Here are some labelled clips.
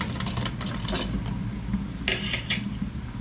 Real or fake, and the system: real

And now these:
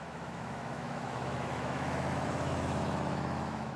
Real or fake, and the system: fake, autoencoder, DAC-VAE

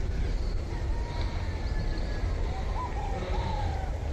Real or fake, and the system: real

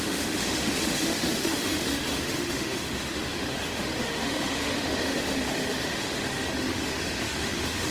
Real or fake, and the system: fake, autoencoder, DAC-VAE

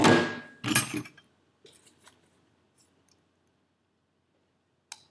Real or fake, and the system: real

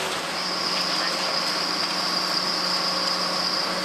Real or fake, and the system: real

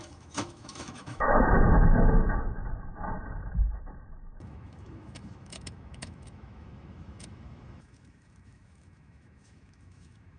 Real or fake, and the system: fake, autoencoder, DAC-VAE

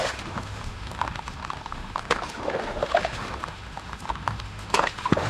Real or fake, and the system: fake, autoencoder, DAC-VAE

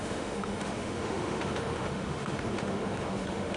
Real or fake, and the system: fake, autoencoder, DAC-VAE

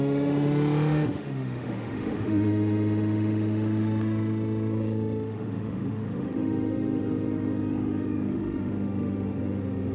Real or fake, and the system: fake, autoencoder, DAC-VAE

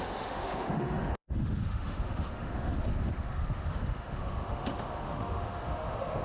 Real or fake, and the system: fake, autoencoder, DAC-VAE